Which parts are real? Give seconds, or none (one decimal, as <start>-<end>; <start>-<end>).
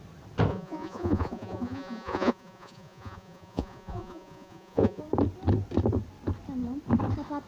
0.0-0.5; 5.0-7.5